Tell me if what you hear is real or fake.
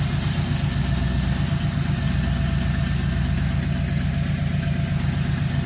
real